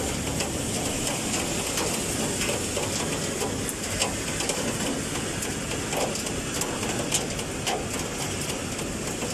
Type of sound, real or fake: real